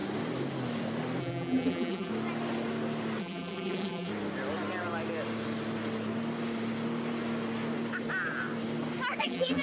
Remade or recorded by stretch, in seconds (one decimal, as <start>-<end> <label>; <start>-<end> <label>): 0.0-1.2 recorded; 1.2-2.1 remade; 2.1-3.2 recorded; 3.2-4.1 remade; 4.1-9.2 recorded; 9.2-9.6 remade